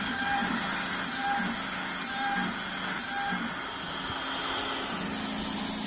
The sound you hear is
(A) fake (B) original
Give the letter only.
B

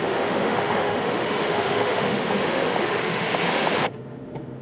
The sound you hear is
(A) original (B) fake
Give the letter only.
B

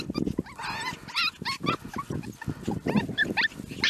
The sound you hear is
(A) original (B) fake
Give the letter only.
A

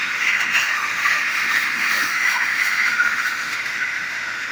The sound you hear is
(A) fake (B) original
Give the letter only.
A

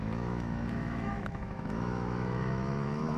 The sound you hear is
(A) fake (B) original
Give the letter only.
A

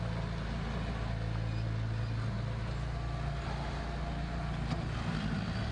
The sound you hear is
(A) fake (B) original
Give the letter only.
B